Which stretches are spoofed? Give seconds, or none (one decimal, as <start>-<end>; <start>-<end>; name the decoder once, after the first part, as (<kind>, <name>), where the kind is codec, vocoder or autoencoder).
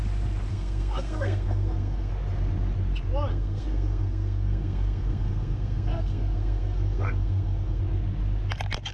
0.5-2.1 (codec, SNAC); 3.3-7.8